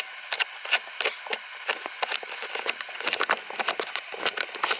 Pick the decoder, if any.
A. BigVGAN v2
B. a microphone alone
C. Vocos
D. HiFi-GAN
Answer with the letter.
B